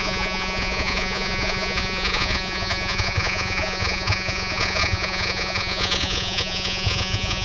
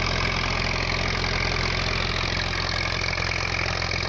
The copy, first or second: first